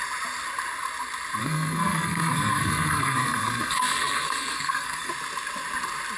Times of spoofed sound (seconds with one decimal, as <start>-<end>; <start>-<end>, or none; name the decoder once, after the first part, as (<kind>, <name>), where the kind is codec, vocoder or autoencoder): 1.4-5.1 (codec, SNAC)